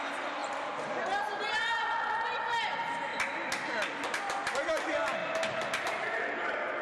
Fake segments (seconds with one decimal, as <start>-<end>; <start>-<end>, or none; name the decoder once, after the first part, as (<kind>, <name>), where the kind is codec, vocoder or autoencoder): none